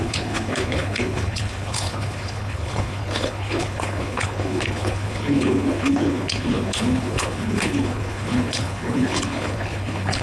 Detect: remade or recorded remade